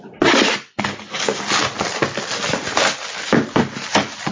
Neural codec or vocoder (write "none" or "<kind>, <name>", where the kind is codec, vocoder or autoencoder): none